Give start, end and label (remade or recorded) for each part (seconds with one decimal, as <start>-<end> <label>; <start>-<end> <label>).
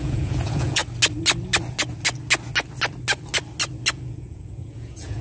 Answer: 0.0-0.8 remade; 0.8-3.9 recorded; 3.9-5.2 remade